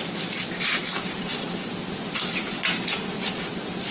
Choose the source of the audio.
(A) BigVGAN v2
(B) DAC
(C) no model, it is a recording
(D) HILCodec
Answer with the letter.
C